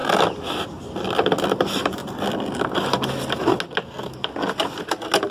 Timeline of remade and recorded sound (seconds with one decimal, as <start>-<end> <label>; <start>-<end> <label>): 0.0-1.6 recorded; 1.6-2.0 remade; 2.0-5.3 recorded